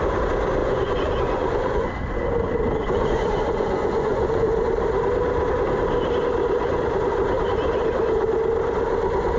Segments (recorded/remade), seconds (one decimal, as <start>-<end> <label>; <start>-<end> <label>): 0.0-0.6 recorded; 0.6-1.9 remade; 1.9-2.8 recorded; 2.8-4.5 remade; 4.5-9.4 recorded